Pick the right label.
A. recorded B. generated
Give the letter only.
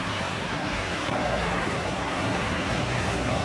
B